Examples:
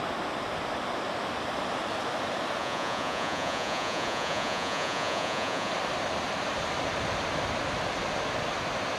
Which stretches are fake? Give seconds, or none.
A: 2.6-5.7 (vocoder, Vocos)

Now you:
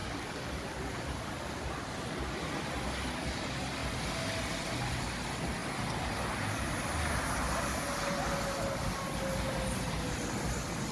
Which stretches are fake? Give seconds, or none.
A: none

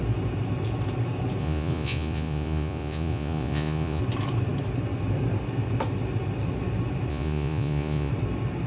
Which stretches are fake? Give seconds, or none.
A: 1.4-4.0 (vocoder, Vocos); 7.1-8.1

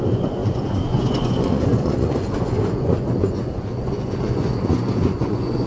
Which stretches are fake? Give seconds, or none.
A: 0.0-5.7 (vocoder, Vocos)